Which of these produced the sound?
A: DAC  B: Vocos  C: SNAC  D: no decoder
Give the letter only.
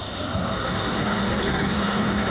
C